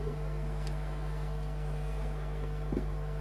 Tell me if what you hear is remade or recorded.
remade